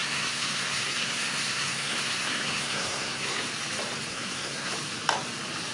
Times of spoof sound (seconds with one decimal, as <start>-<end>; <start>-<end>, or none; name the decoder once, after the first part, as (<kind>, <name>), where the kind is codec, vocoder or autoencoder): 0.0-3.4 (codec, SNAC); 4.1-4.7